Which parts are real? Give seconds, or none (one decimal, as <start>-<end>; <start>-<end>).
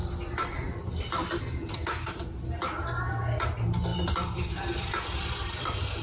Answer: 1.3-3.9; 5.6-6.0